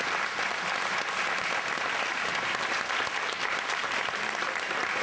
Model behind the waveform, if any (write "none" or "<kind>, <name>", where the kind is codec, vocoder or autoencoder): none